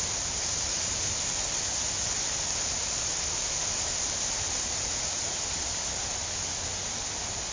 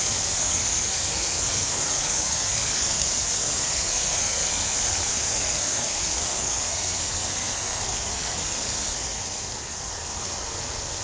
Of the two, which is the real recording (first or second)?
first